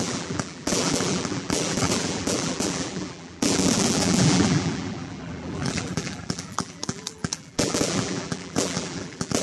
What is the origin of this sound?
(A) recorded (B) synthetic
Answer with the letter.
B